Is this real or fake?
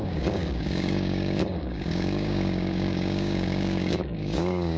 fake